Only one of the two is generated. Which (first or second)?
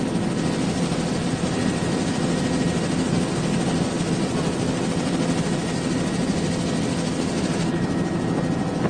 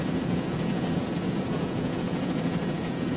second